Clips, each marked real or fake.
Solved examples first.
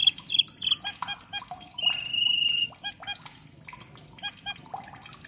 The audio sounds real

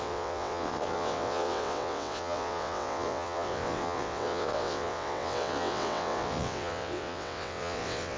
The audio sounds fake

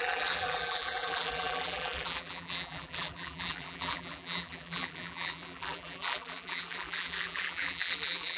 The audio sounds fake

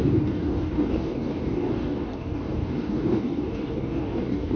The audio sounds fake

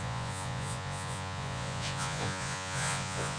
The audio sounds fake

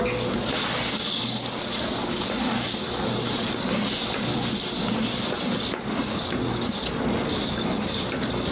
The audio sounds real